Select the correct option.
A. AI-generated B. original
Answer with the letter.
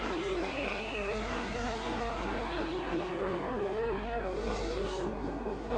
A